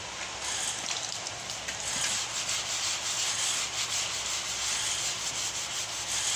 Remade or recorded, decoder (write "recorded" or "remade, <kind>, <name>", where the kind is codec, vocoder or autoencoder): recorded